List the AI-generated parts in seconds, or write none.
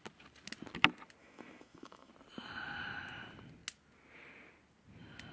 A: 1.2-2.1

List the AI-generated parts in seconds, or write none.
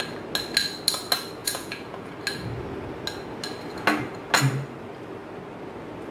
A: 1.4-2.1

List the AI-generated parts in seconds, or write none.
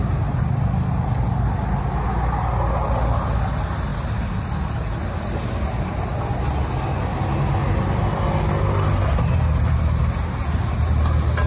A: none